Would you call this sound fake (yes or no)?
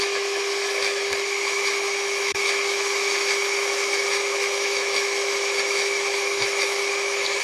yes